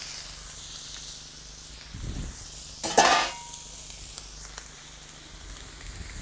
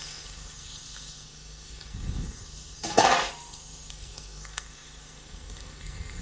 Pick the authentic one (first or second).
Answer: first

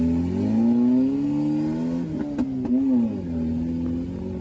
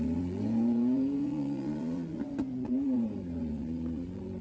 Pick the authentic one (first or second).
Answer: first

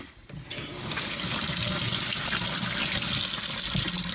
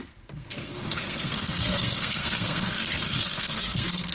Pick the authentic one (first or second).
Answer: first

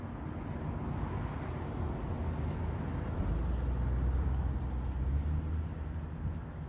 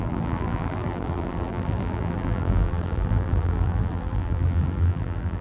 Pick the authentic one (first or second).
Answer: first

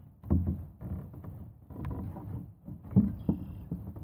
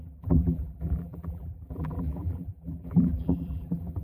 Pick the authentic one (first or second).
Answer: first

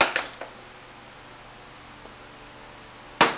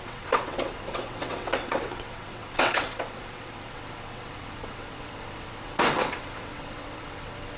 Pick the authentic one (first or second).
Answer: first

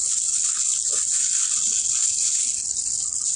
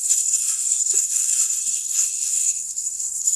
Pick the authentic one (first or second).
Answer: first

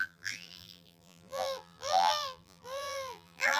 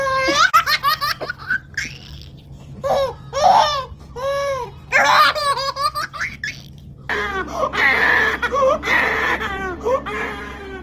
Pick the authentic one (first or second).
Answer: second